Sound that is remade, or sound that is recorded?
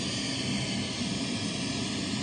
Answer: recorded